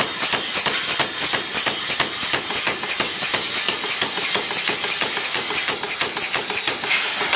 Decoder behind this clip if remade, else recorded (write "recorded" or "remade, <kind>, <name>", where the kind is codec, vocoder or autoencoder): recorded